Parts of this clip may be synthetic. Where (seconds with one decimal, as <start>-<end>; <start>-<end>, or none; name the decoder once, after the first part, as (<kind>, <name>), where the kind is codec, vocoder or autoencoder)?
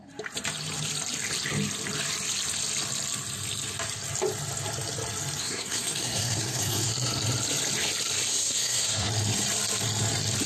5.4-6.9 (codec, SNAC); 8.3-9.1